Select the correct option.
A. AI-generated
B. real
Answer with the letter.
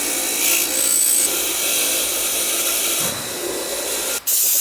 B